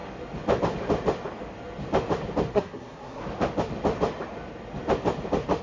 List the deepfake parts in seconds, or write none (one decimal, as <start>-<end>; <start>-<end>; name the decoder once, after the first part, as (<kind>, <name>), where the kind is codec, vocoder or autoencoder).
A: 2.5-3.2 (codec, SNAC)